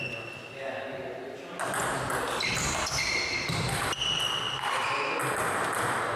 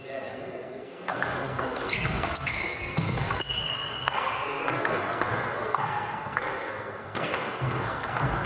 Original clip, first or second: first